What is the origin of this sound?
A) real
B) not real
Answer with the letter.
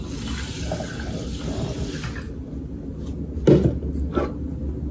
A